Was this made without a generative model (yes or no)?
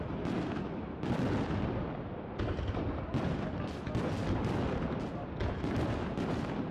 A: yes